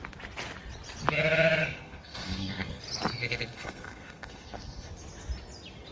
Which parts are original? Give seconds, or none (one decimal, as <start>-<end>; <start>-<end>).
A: 0.0-1.6; 2.8-3.2; 4.9-5.9